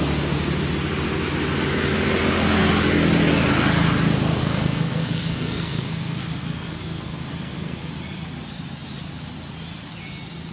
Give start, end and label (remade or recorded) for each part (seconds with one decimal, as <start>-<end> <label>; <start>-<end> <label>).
0.0-4.4 recorded; 4.4-7.9 remade; 7.9-10.5 recorded